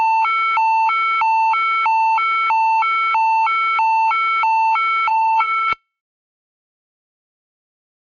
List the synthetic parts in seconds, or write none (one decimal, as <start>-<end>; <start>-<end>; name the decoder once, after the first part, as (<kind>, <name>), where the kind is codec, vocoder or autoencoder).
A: 5.1-6.0 (vocoder, BigVGAN v2)